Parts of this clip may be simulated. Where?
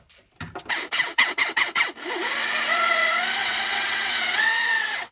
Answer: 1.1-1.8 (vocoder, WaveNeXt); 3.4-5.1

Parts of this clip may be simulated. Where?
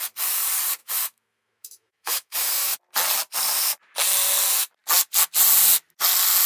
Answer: 0.8-2.8 (autoencoder, DAC-VAE)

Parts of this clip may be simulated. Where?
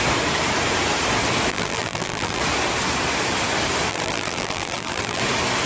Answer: 1.5-2.4 (vocoder, BigVGAN v2); 3.9-5.2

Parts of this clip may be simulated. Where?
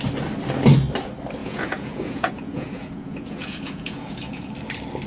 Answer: 1.4-4.5 (vocoder, Vocos)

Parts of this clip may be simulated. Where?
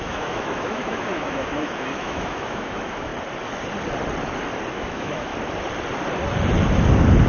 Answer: 0.0-3.1 (autoencoder, DAC-VAE); 4.7-5.3